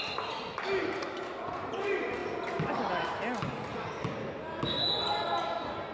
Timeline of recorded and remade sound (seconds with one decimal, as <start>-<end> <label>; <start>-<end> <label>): 0.0-3.7 recorded; 3.7-4.4 remade; 4.4-5.9 recorded